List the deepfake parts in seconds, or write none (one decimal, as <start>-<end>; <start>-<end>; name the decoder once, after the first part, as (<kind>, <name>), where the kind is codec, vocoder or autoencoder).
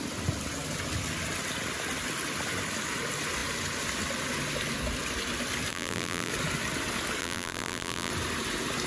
5.7-6.3 (vocoder, BigVGAN v2); 7.2-8.1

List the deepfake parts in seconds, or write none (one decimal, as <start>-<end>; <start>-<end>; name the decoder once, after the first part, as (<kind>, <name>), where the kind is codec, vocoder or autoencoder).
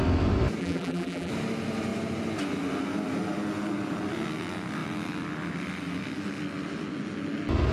0.6-1.3 (vocoder, BigVGAN v2)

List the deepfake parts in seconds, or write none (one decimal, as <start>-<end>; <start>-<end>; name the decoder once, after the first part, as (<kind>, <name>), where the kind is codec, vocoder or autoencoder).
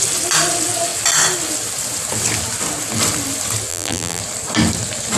3.7-4.2 (vocoder, BigVGAN v2)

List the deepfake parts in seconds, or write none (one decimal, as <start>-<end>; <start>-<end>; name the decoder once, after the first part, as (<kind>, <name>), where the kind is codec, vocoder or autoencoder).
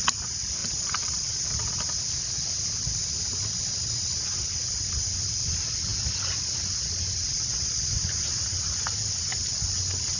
0.6-1.5 (vocoder, BigVGAN v2)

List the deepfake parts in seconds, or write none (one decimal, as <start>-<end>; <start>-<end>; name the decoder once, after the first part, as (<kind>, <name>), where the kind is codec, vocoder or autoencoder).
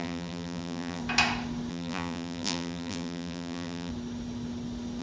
0.0-1.0 (vocoder, BigVGAN v2); 1.7-3.9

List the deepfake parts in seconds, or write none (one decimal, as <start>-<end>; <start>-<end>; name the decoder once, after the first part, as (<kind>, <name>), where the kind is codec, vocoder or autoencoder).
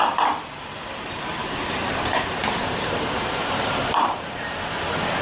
1.4-4.5 (vocoder, BigVGAN v2)